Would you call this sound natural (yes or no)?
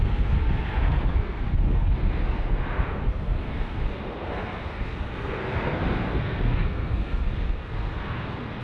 no